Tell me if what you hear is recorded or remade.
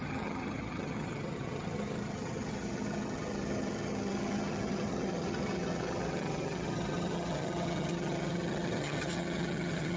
remade